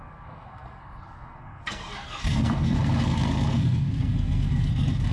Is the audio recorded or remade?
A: remade